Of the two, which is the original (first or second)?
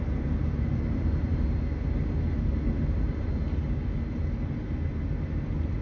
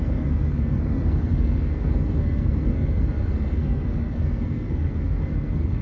first